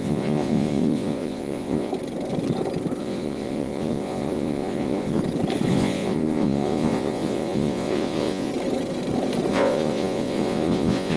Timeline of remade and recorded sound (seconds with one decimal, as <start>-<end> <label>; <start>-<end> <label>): 0.0-1.9 remade; 1.9-3.0 recorded; 3.0-5.2 remade; 5.2-5.7 recorded; 5.7-8.5 remade; 8.5-9.5 recorded; 9.5-11.2 remade